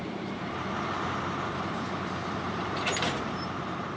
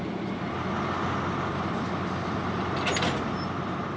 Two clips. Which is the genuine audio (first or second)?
second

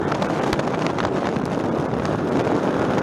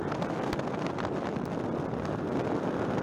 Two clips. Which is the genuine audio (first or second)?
second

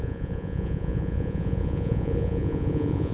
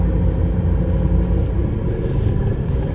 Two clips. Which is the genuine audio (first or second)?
second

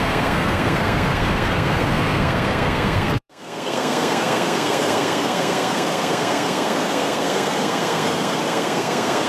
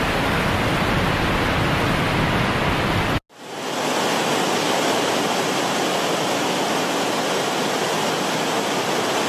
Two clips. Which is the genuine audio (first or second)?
second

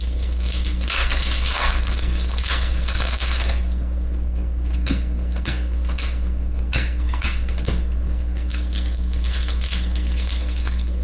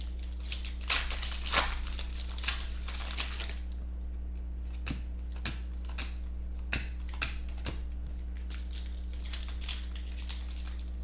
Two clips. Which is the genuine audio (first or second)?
second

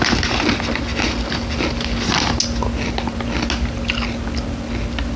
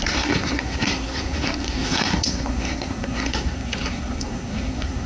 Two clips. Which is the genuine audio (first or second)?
first